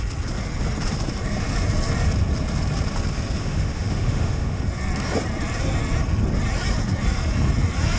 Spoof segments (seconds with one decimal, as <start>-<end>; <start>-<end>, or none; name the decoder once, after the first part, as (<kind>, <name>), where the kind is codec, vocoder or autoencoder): 3.4-4.6 (autoencoder, DAC-VAE)